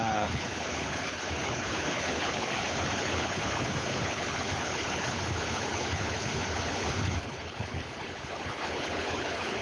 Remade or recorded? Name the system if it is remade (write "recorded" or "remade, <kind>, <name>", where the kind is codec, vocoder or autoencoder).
remade, codec, HILCodec